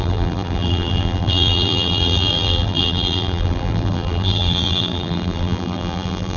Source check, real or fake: fake